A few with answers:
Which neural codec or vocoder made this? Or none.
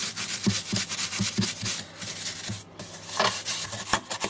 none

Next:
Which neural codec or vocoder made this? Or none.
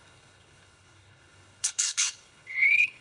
codec, HILCodec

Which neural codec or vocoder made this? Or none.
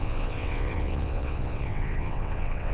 vocoder, WaveNeXt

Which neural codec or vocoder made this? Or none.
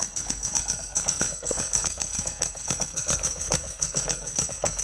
codec, SNAC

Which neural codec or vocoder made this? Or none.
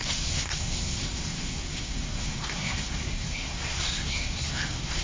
codec, SNAC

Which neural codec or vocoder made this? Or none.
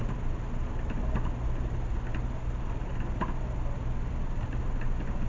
none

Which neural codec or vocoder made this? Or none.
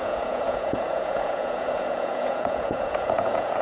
vocoder, Vocos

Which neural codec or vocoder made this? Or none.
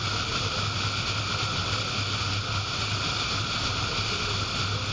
none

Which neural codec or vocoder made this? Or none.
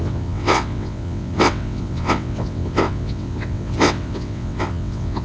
vocoder, WaveNeXt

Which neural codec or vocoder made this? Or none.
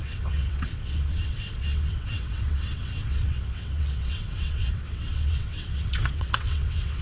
vocoder, WaveNeXt